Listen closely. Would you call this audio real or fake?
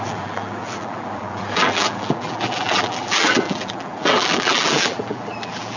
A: fake